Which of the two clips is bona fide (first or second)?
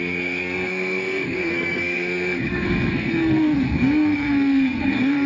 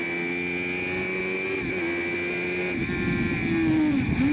second